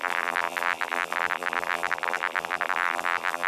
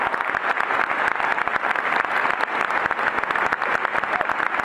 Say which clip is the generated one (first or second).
first